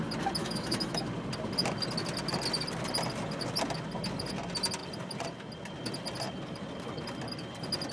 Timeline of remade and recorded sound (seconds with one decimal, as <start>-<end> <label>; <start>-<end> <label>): 0.0-0.4 recorded; 0.4-1.0 remade; 1.0-7.9 recorded